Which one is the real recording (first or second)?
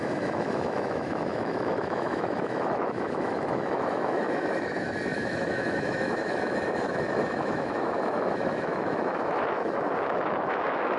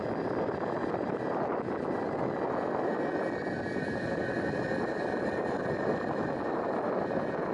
second